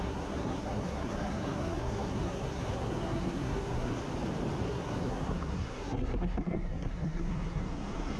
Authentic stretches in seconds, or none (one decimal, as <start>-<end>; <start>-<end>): 4.0-4.6